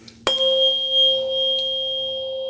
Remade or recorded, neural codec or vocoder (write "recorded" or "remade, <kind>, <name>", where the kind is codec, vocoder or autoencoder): recorded